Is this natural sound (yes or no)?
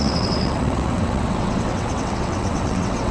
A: no